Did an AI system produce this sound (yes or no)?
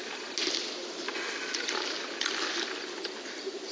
no